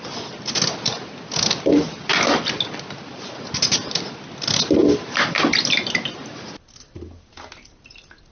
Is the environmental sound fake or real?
real